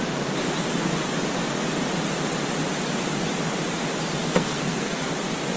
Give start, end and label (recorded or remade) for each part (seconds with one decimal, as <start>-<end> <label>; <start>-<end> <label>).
0.0-4.2 recorded; 4.2-5.1 remade; 5.1-5.6 recorded